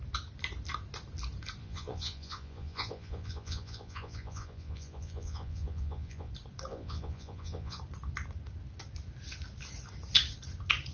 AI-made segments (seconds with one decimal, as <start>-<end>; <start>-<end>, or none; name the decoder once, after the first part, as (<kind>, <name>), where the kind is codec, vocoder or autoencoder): 1.6-6.3 (vocoder, Vocos); 6.7-7.8